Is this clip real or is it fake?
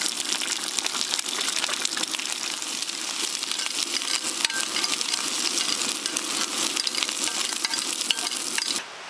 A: real